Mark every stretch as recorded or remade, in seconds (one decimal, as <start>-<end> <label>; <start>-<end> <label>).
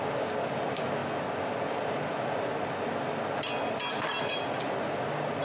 0.0-5.4 recorded